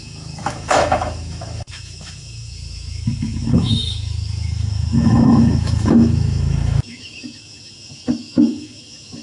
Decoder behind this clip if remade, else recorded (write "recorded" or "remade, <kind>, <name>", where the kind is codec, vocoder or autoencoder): remade, autoencoder, DAC-VAE